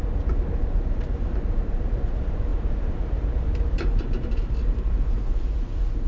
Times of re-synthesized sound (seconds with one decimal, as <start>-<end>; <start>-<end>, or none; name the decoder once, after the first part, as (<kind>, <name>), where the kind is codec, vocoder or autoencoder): 0.0-6.1 (vocoder, BigVGAN v2)